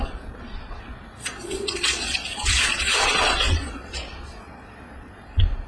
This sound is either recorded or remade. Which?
remade